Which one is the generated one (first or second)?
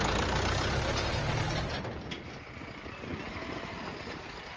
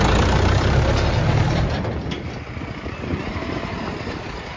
second